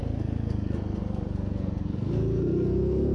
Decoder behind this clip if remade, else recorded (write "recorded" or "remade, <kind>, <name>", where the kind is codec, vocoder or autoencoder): remade, codec, SNAC